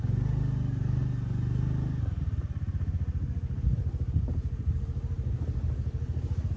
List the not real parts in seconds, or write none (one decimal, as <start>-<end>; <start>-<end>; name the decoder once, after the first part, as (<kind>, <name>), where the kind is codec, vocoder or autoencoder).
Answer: none